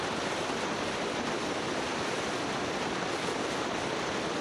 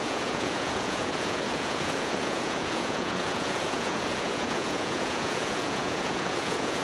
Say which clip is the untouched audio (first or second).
first